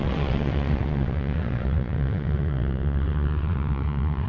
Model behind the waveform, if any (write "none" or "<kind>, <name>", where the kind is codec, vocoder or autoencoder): vocoder, WaveNeXt